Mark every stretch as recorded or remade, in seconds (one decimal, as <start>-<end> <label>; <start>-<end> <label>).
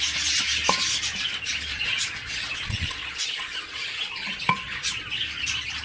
0.0-1.7 recorded; 1.7-5.2 remade; 5.2-5.8 recorded